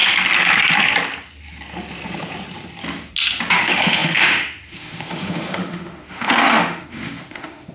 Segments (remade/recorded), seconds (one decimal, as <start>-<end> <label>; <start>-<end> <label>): 0.0-3.5 recorded; 3.5-7.7 remade